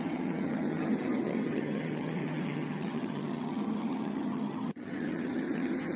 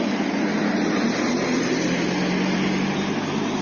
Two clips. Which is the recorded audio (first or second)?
second